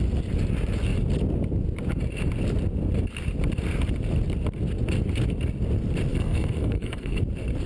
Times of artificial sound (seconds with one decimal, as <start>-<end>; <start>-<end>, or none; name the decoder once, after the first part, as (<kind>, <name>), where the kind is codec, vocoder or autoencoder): 6.1-7.2 (codec, SNAC)